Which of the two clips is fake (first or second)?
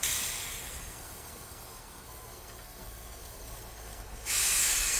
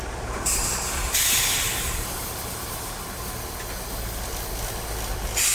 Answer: first